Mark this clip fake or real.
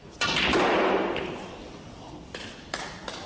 fake